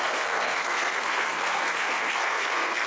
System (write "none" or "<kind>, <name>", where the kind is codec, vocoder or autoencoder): codec, SNAC